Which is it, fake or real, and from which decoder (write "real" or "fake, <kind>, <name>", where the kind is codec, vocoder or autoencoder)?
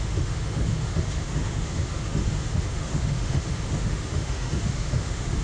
fake, autoencoder, DAC-VAE